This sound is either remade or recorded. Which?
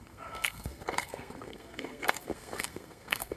remade